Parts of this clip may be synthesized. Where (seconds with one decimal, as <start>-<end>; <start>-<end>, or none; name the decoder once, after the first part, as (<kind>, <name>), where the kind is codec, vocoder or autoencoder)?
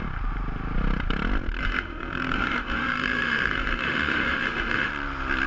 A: 1.6-4.9 (autoencoder, DAC-VAE)